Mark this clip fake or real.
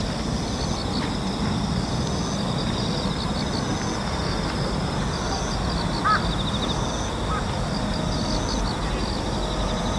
real